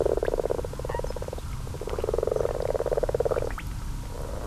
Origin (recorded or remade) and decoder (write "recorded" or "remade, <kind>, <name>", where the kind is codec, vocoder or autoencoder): recorded